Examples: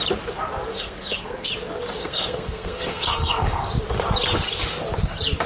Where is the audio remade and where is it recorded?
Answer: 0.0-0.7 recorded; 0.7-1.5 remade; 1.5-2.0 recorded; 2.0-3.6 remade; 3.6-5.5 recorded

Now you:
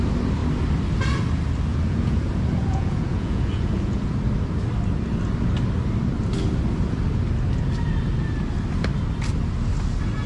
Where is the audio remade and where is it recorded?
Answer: 0.0-1.7 recorded; 1.7-4.0 remade; 4.0-10.3 recorded

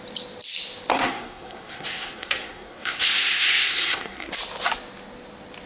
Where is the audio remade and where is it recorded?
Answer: 0.0-0.9 recorded; 0.9-4.3 remade; 4.3-5.7 recorded

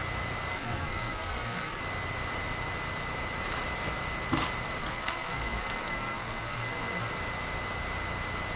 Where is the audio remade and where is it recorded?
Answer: 0.0-0.5 recorded; 0.5-1.8 remade; 1.8-4.8 recorded; 4.8-7.1 remade; 7.1-8.6 recorded

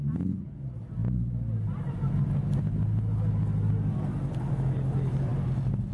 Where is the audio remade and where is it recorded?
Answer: 0.0-5.9 recorded

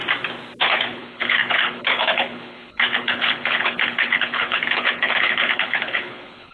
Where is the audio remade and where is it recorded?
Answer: 0.0-0.6 recorded; 0.6-6.5 remade

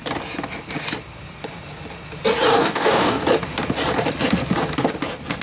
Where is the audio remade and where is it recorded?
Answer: 0.0-2.5 recorded; 2.5-3.2 remade; 3.2-5.4 recorded